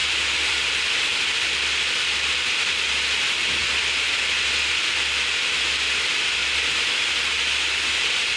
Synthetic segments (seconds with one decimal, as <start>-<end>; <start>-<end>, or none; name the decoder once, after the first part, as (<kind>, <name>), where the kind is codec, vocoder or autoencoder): 0.0-0.7 (vocoder, BigVGAN v2); 6.4-7.1